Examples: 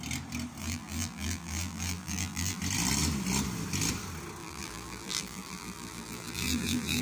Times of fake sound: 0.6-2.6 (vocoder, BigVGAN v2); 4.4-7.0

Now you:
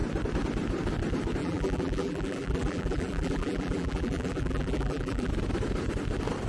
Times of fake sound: 1.4-5.3 (vocoder, BigVGAN v2)

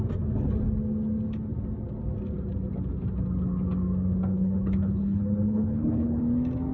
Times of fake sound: 4.3-6.2 (codec, HILCodec)

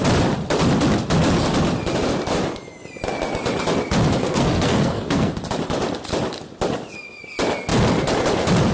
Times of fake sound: 4.2-5.3 (codec, SNAC)

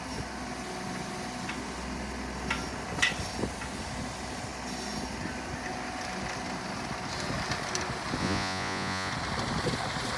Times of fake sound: 8.2-9.1 (vocoder, Vocos)